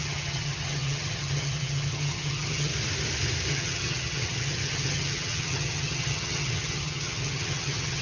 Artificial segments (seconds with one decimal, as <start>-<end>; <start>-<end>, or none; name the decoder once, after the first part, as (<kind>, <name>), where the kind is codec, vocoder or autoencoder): 0.0-2.7 (vocoder, HiFi-GAN); 3.5-8.0